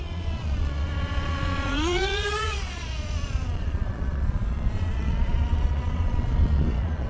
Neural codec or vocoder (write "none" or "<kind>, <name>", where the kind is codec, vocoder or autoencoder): vocoder, Vocos